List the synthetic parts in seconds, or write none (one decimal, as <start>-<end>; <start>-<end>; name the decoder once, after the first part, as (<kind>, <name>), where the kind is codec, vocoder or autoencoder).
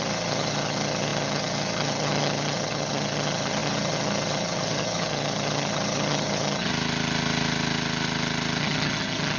0.0-6.7 (vocoder, HiFi-GAN); 8.6-9.4